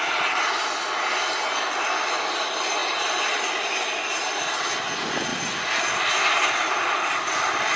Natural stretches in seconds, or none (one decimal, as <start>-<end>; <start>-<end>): 0.0-7.8